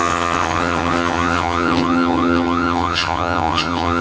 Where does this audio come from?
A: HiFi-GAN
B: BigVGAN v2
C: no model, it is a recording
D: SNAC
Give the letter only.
A